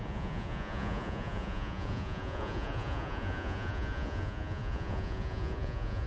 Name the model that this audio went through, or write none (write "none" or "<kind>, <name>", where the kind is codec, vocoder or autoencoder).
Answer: vocoder, Vocos